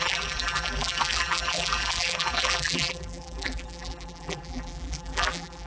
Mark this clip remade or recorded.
remade